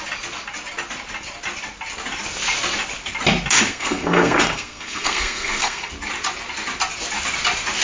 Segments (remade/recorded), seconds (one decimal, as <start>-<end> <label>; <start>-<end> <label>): 0.0-3.7 recorded; 3.7-5.9 remade; 5.9-7.8 recorded